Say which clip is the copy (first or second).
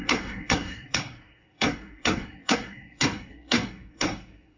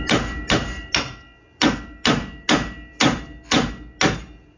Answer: first